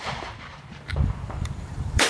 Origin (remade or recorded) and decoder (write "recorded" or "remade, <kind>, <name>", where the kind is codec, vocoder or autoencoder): remade, vocoder, BigVGAN v2